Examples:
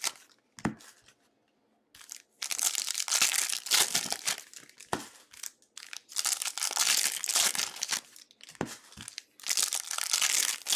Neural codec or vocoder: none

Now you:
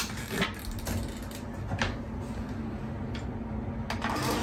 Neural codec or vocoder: none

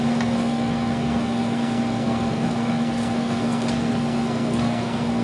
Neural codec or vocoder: codec, SNAC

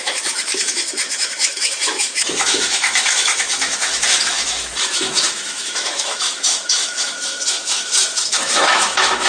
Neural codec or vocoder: autoencoder, DAC-VAE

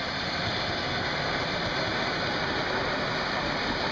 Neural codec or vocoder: none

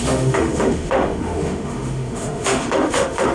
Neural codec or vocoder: autoencoder, DAC-VAE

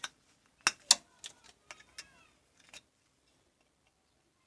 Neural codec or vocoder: none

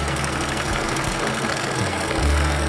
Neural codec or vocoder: codec, SNAC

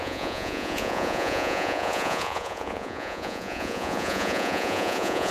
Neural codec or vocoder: vocoder, Vocos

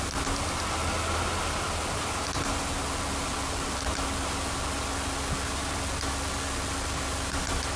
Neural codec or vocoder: none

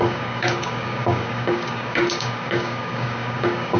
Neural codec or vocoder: codec, DAC